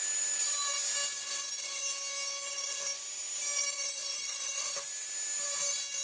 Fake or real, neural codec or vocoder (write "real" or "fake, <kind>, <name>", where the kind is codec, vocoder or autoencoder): real